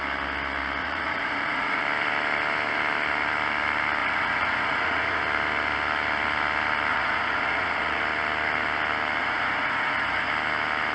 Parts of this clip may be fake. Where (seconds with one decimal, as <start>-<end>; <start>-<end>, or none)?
0.8-1.8; 4.0-5.2; 6.9-8.0; 9.2-10.3